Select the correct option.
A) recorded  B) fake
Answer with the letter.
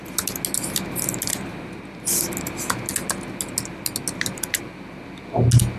A